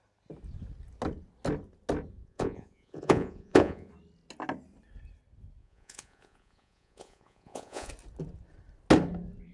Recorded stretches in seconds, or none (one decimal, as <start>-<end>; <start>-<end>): 0.0-2.2; 3.9-5.6; 7.9-9.5